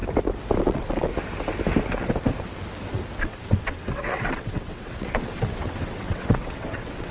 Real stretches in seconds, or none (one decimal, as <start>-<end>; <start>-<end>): 0.0-0.6; 1.1-3.2